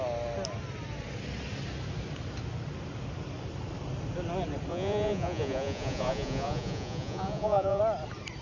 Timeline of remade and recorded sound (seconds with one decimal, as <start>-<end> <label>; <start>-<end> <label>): 0.0-4.7 recorded; 4.7-7.8 remade; 7.8-8.4 recorded